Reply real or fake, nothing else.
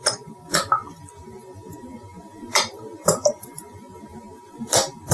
fake